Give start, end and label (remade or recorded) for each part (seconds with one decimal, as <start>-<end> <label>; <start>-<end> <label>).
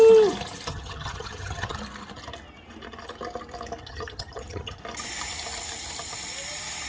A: 0.0-0.7 recorded; 0.7-1.8 remade; 1.8-3.8 recorded; 3.8-4.8 remade; 4.8-6.9 recorded